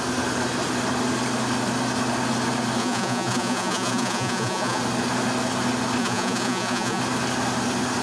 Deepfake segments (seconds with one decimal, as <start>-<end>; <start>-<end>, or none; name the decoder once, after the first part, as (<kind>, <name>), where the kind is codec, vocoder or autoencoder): 2.8-4.8 (vocoder, Vocos); 6.0-7.0